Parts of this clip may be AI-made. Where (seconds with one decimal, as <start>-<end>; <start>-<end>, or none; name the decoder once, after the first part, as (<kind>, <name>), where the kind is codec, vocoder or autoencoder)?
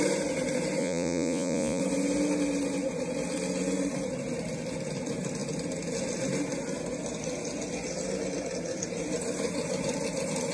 0.8-1.8 (vocoder, Vocos)